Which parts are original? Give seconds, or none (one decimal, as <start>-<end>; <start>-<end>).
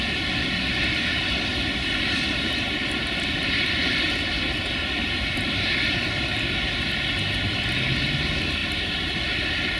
0.0-1.5; 6.4-8.6; 9.2-9.8